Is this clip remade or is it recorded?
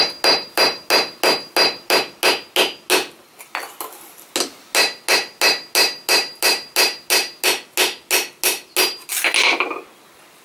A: recorded